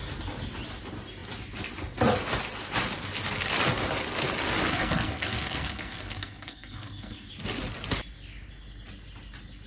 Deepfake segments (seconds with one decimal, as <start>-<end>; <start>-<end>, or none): 4.7-7.3